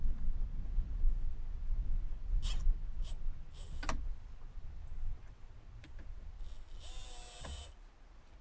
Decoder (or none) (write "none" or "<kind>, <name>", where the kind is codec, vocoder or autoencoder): none